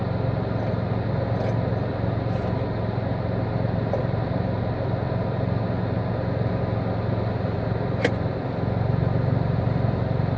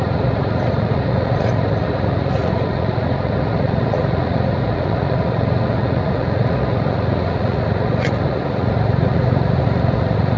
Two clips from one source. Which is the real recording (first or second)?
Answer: first